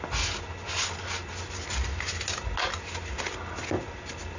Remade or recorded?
recorded